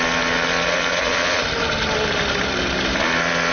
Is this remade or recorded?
recorded